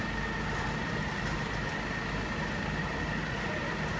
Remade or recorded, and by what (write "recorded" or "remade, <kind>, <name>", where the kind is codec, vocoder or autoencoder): recorded